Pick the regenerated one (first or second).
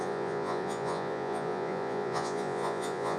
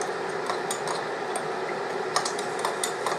first